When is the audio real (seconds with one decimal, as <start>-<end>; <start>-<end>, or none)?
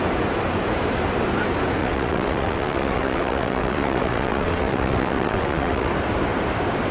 0.0-1.8; 5.9-6.9